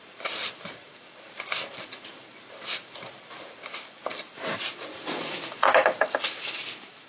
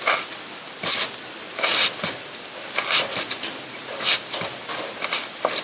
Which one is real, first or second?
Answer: second